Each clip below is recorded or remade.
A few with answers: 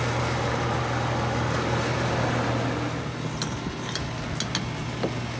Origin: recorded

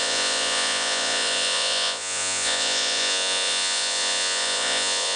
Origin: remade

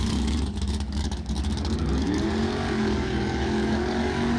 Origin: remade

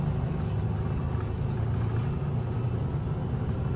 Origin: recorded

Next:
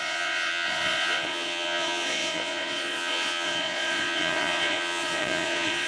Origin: remade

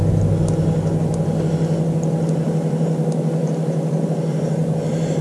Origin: recorded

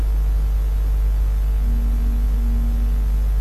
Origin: recorded